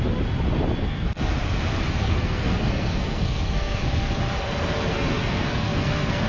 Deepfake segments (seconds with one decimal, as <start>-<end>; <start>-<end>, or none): 0.8-1.3; 2.0-3.8; 4.9-6.3